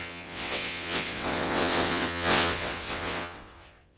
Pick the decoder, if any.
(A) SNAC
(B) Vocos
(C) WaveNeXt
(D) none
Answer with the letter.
C